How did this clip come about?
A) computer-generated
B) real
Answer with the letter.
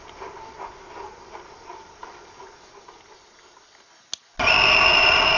B